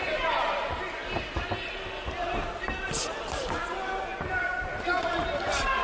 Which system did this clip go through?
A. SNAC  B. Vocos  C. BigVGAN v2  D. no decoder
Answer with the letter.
D